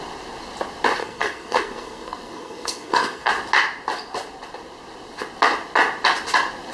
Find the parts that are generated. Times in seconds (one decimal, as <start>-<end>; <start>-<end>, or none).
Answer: 1.0-3.3

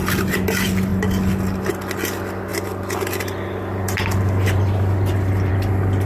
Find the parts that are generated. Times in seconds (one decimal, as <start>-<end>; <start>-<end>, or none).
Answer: 0.9-1.7; 2.5-5.5

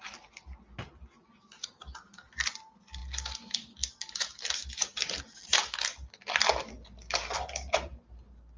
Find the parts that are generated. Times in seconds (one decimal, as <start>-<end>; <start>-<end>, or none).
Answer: none

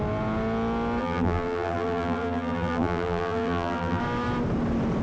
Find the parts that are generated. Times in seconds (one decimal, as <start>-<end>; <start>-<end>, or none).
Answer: 1.0-4.0

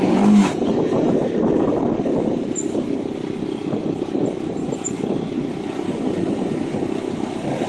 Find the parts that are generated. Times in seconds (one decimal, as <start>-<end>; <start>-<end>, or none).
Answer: 4.6-6.9